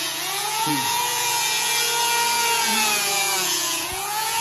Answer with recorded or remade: remade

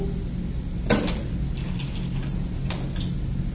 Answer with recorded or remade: recorded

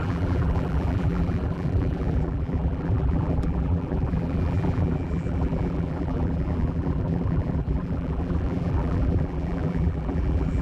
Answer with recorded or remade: remade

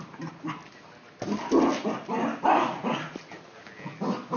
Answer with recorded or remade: recorded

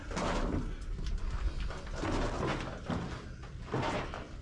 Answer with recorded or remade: recorded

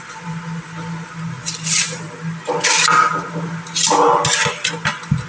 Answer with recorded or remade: recorded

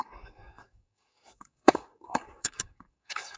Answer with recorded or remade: remade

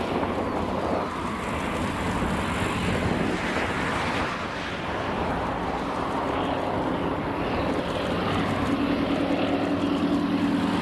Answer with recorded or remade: recorded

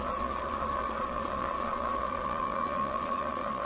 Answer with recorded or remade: remade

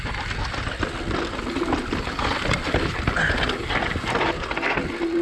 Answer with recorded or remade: recorded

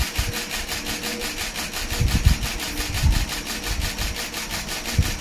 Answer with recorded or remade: recorded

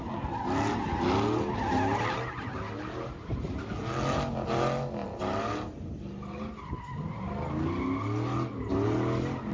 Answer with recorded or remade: recorded